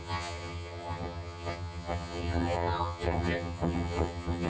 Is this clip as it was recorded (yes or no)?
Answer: no